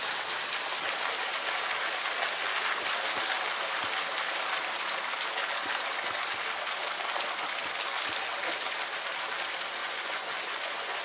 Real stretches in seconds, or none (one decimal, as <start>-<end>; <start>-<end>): 0.0-9.8